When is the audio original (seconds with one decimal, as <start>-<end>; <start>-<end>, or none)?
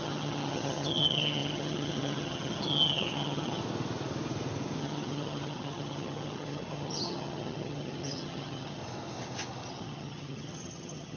3.6-4.8; 8.8-9.7